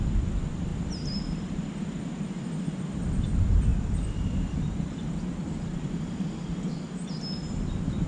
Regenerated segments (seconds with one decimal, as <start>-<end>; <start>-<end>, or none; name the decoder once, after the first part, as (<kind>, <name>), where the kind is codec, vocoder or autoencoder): 0.0-8.1 (vocoder, BigVGAN v2)